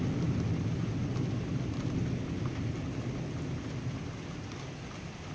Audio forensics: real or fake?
real